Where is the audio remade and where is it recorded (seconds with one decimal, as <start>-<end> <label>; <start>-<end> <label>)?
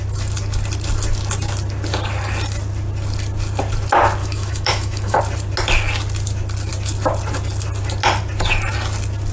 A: 0.0-4.2 recorded; 4.2-5.2 remade; 5.2-9.3 recorded